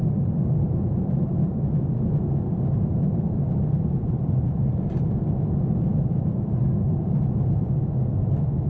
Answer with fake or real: fake